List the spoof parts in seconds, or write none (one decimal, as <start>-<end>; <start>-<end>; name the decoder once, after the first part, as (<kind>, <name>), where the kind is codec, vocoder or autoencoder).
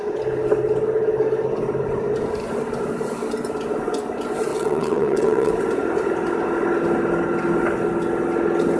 4.5-5.5 (vocoder, WaveNeXt)